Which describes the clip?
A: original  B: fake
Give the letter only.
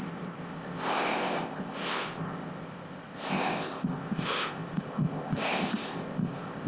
B